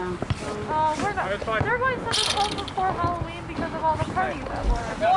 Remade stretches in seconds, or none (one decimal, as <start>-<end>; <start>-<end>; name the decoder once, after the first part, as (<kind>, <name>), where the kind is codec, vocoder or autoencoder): none